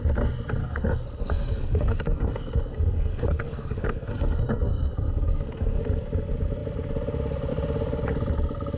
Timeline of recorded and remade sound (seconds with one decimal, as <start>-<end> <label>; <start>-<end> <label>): 0.0-0.6 recorded; 0.6-5.8 remade; 5.8-8.8 recorded

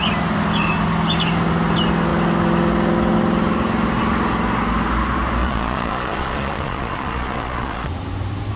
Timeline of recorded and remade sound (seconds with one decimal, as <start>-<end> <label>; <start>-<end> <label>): 0.0-5.4 recorded; 5.4-7.9 remade; 7.9-8.6 recorded